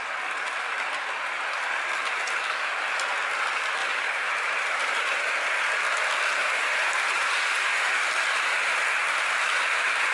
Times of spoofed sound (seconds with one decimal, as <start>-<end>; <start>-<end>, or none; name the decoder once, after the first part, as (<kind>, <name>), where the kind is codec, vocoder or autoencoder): 3.8-5.3 (vocoder, BigVGAN v2); 6.4-8.1